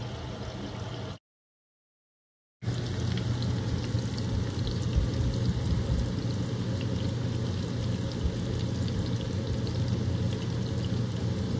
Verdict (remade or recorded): recorded